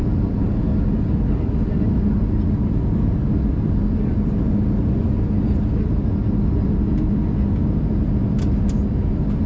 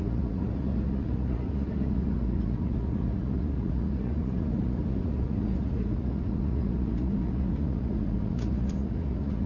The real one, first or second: first